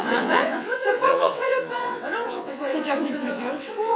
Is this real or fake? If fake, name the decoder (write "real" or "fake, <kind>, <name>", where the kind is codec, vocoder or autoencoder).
fake, vocoder, WaveNeXt